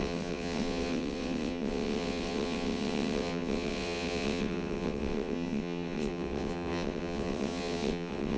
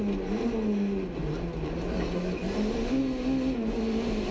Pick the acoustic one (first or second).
second